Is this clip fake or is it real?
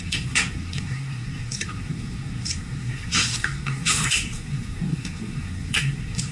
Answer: fake